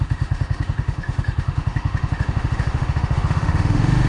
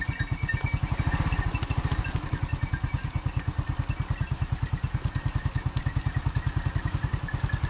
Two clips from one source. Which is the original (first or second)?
second